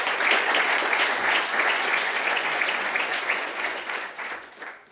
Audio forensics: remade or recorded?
remade